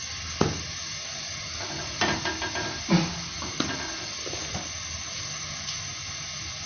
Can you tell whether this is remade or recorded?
recorded